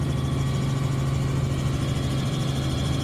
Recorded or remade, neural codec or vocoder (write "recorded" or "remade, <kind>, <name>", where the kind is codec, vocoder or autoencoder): recorded